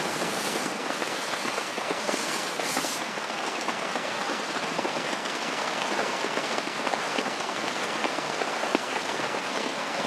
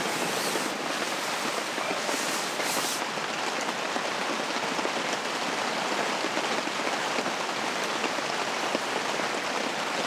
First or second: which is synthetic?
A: first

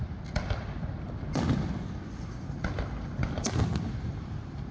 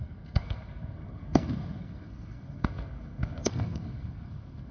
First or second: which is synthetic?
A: second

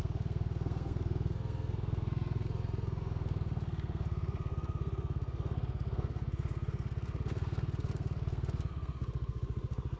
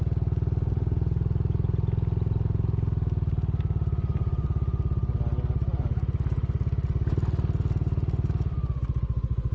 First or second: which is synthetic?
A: first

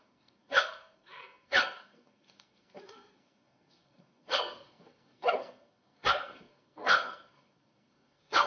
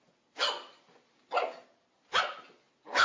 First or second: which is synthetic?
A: first